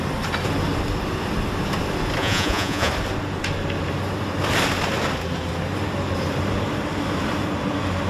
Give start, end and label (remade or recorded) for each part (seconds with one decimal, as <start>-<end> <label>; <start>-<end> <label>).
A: 0.0-2.2 recorded; 2.2-2.9 remade; 2.9-8.1 recorded